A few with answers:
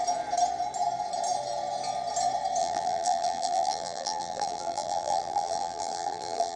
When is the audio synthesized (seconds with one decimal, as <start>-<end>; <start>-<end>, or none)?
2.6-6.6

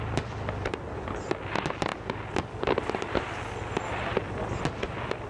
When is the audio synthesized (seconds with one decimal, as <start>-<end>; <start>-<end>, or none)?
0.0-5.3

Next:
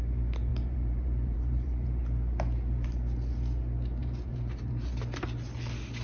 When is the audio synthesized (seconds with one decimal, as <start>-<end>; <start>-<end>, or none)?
0.5-2.0; 4.0-4.9

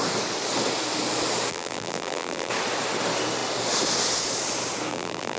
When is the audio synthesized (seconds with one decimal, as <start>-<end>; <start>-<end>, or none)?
1.5-2.5; 4.9-5.4